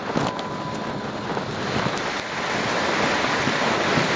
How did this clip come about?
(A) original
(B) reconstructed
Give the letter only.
A